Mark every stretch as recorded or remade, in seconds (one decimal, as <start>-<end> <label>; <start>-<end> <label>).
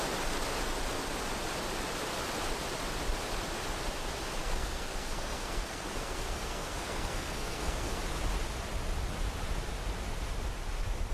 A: 0.0-4.4 recorded; 4.4-8.0 remade; 8.0-11.1 recorded